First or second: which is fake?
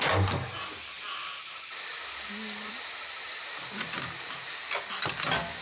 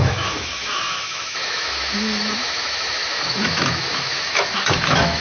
second